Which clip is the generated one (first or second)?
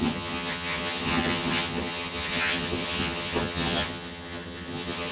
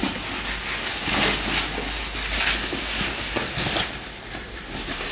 first